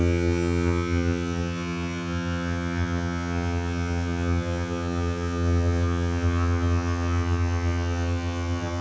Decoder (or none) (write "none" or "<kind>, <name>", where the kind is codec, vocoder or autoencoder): vocoder, HiFi-GAN